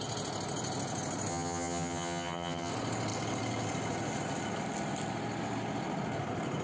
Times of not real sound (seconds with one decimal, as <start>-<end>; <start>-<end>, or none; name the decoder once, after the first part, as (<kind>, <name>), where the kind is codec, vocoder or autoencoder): 1.3-2.7 (vocoder, HiFi-GAN)